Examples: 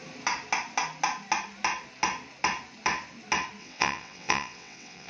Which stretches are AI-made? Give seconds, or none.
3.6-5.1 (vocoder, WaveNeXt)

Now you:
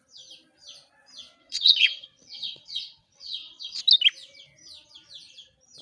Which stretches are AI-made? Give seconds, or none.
1.4-3.8 (vocoder, WaveNeXt)

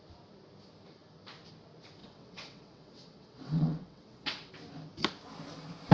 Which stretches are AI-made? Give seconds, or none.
2.0-4.5 (vocoder, WaveNeXt)